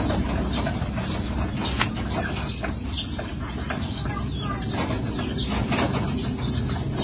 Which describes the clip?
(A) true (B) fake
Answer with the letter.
A